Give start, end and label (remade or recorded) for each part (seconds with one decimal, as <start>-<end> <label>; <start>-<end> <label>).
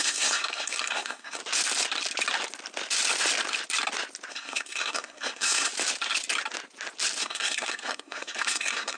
0.0-1.4 remade; 1.4-4.3 recorded; 4.3-5.7 remade; 5.7-7.2 recorded; 7.2-9.0 remade